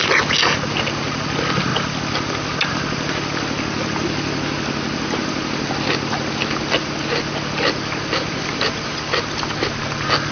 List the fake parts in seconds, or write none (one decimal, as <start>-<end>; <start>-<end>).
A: none